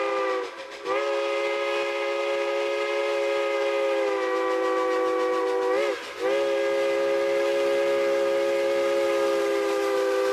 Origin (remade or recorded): recorded